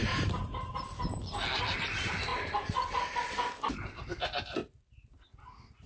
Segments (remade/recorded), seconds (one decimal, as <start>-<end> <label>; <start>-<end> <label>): 0.0-0.7 remade; 0.7-4.6 recorded; 4.6-5.9 remade